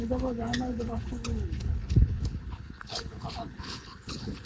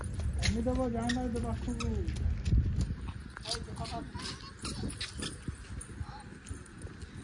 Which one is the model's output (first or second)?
first